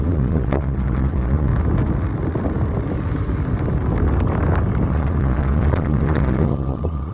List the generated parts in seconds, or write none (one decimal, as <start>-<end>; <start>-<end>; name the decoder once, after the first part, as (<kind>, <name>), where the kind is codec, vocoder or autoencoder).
0.0-1.5 (vocoder, Vocos); 4.9-7.1